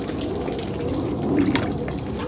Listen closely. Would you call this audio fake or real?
real